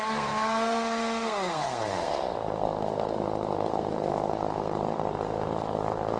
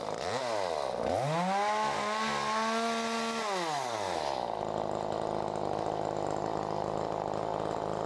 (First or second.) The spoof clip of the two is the first